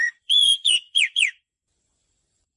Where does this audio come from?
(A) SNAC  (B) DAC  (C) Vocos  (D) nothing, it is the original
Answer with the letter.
C